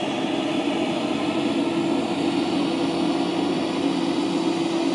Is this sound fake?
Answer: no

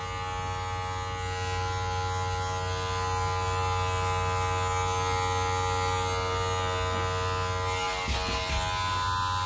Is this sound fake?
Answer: no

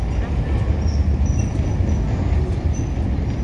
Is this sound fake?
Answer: no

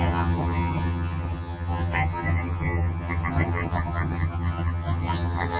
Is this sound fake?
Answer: yes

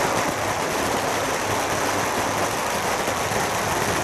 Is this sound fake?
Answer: no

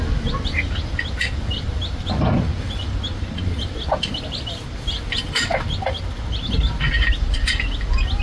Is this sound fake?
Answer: no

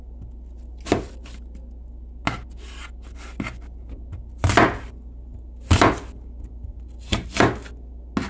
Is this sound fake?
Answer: no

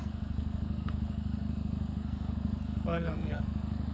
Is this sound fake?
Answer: yes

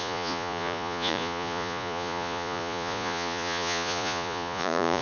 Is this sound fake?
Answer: yes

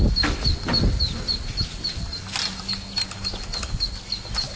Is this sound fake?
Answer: no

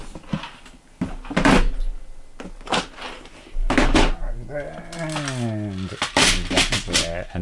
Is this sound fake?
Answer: no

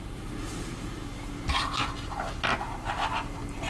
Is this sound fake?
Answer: no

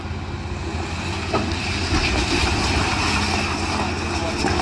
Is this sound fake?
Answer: no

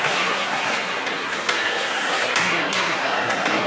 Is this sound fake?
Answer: yes